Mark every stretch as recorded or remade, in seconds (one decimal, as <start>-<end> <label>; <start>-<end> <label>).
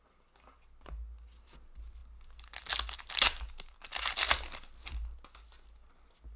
0.0-6.4 recorded